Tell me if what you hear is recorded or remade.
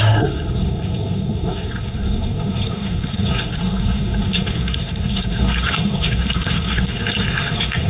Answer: remade